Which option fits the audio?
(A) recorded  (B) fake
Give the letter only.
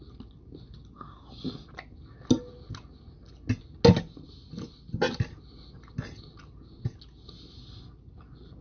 A